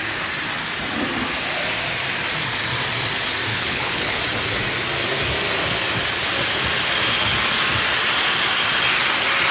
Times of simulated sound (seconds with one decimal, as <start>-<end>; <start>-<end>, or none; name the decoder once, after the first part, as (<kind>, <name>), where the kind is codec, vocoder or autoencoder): 3.5-4.2 (codec, HILCodec)